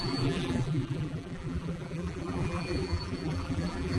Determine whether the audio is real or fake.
fake